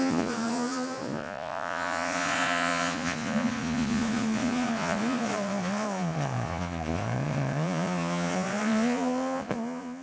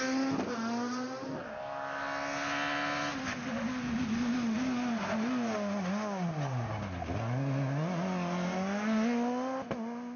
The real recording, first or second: second